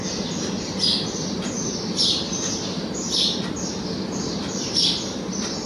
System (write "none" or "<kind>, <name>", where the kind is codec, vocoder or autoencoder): none